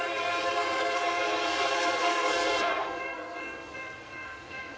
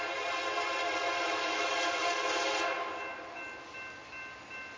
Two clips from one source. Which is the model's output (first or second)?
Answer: first